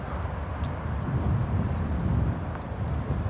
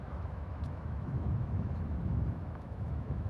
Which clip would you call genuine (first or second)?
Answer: first